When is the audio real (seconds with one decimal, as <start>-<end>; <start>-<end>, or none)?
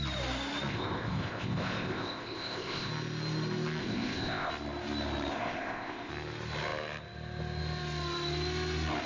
0.0-0.7; 2.9-3.8; 4.5-5.3; 6.1-9.1